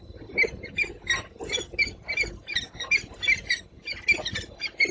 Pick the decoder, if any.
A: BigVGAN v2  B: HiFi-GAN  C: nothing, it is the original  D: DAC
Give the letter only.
C